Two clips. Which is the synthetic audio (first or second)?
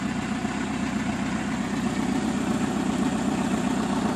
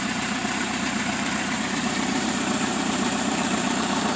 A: second